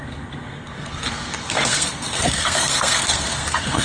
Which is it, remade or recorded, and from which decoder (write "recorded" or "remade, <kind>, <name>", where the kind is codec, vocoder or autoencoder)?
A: remade, codec, SNAC